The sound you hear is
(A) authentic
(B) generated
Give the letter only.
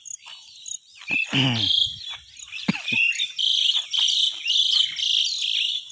A